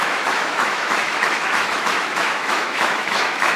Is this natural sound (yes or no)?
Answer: no